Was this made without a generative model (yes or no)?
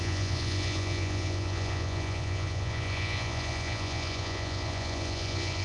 no